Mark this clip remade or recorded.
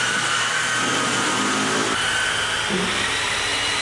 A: recorded